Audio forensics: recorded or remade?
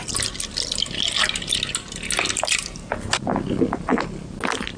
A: recorded